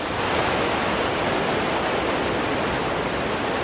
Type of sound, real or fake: real